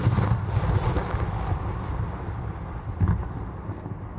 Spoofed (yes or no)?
no